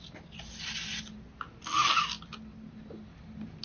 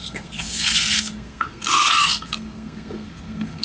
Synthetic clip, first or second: second